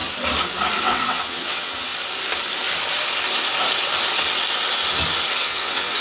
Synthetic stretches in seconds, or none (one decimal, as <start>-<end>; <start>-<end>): 0.8-1.9; 5.4-6.0